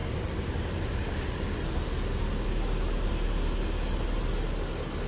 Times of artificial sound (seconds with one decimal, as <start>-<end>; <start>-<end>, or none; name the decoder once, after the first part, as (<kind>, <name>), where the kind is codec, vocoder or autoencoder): none